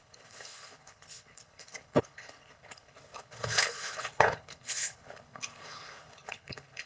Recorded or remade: remade